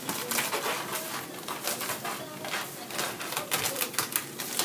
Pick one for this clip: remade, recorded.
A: recorded